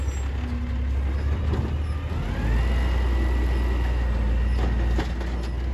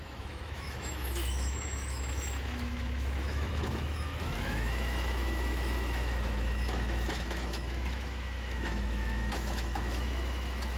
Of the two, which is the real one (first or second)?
first